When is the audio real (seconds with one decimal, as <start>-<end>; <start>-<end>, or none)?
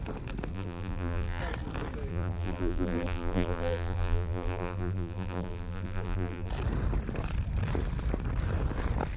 0.0-0.5; 1.4-2.1; 6.5-9.2